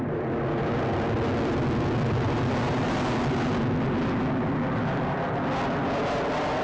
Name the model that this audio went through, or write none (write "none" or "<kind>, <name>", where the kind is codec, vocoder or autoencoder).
none